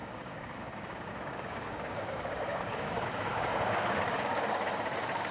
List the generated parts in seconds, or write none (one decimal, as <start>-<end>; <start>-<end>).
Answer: 0.0-4.7